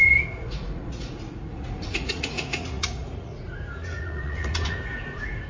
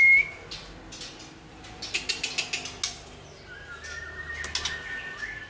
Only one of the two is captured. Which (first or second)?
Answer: second